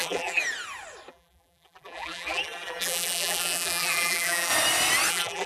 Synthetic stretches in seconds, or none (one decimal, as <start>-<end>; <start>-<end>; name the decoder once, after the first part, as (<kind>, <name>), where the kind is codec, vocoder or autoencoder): 0.0-0.4 (vocoder, BigVGAN v2); 1.1-4.5; 5.1-5.5